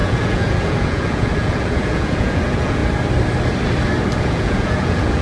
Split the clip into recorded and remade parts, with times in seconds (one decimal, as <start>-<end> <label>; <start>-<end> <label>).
0.0-2.8 remade; 2.8-4.2 recorded; 4.2-5.2 remade